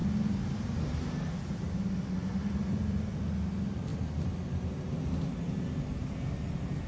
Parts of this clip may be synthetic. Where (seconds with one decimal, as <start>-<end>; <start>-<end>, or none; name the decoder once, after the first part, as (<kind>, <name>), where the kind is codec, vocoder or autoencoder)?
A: none